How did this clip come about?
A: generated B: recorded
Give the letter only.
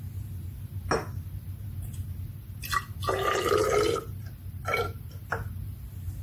B